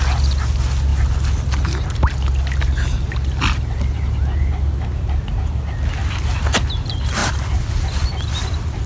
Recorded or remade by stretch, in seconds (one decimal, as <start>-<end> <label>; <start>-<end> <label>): 0.0-8.9 recorded